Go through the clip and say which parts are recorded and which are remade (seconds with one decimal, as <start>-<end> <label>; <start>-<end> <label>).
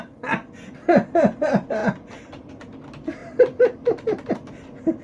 0.0-1.8 recorded; 1.8-2.5 remade; 2.5-3.2 recorded; 3.2-4.3 remade; 4.3-5.0 recorded